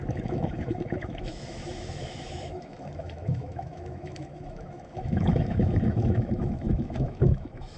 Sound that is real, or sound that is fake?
fake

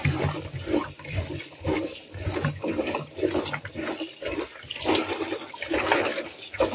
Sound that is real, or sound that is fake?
real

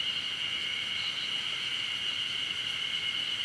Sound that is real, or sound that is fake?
real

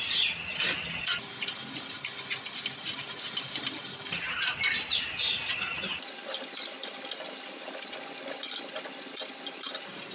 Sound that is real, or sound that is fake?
real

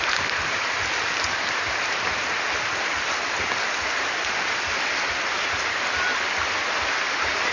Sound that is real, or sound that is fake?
real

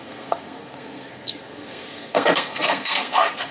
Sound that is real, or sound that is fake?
fake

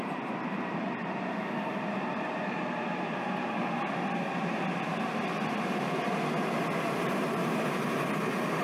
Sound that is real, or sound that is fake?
real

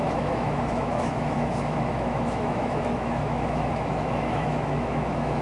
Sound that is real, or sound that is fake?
fake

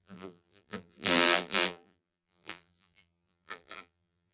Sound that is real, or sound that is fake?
fake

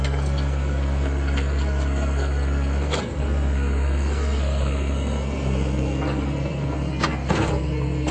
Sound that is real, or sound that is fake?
fake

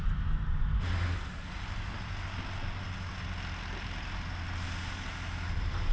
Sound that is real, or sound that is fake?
real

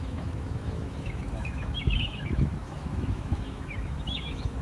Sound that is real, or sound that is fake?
fake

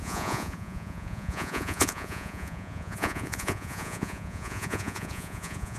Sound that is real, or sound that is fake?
fake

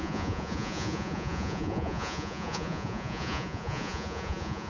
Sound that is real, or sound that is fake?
fake